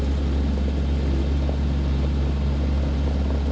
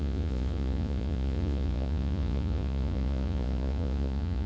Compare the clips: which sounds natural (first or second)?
first